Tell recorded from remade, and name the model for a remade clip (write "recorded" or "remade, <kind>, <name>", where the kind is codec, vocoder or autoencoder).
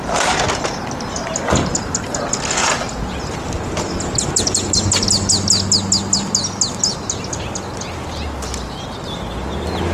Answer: recorded